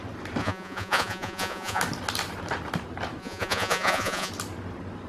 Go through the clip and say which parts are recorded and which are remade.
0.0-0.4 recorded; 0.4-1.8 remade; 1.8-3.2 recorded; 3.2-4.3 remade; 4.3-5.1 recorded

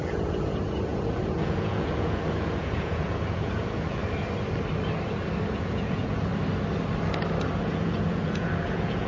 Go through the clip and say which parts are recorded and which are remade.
0.0-4.0 remade; 4.0-5.5 recorded; 5.5-6.3 remade; 6.3-7.6 recorded; 7.6-9.1 remade

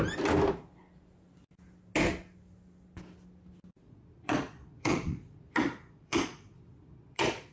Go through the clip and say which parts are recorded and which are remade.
0.0-3.8 recorded; 3.8-7.5 remade

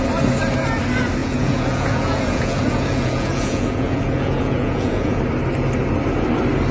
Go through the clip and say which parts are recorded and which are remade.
0.0-1.2 recorded; 1.2-5.2 remade; 5.2-6.7 recorded

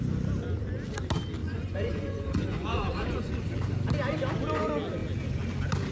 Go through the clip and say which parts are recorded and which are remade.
0.0-1.4 recorded; 1.4-3.3 remade; 3.3-5.9 recorded